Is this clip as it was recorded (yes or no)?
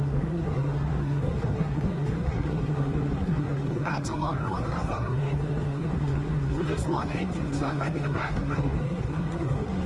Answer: no